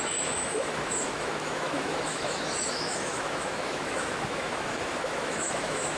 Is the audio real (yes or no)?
no